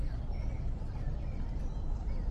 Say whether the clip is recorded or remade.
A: recorded